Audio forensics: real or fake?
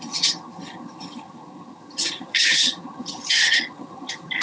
fake